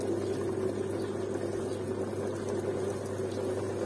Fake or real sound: real